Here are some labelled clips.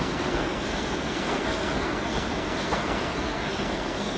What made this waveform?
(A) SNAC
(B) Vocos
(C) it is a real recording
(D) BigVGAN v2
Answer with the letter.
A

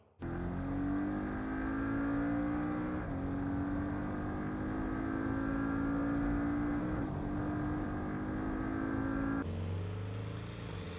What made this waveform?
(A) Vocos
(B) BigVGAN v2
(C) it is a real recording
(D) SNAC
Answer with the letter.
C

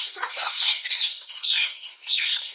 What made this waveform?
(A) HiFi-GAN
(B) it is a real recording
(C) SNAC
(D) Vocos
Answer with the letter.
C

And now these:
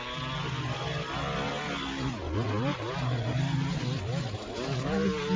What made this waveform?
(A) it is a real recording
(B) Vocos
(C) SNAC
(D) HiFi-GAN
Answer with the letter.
A